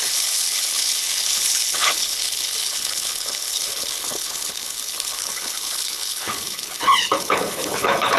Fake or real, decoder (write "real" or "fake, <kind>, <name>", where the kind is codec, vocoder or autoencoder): fake, codec, HILCodec